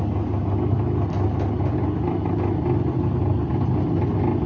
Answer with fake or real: real